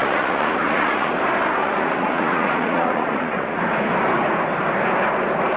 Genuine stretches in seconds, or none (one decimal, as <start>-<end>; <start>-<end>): 1.1-1.6; 3.6-5.6